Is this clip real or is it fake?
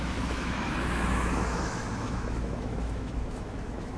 fake